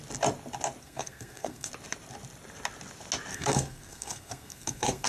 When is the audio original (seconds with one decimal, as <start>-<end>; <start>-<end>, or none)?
0.0-0.8; 1.7-3.3